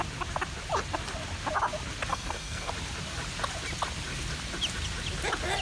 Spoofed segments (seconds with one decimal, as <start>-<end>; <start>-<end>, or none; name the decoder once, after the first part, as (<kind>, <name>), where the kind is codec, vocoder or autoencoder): 2.1-2.7 (codec, SNAC)